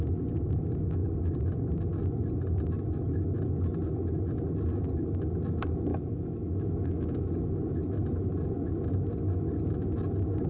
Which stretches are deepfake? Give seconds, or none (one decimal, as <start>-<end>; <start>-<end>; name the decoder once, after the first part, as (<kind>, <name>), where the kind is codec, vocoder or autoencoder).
5.9-7.2 (autoencoder, DAC-VAE)